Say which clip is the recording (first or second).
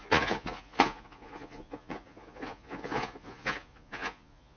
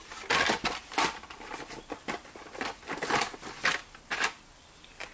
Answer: second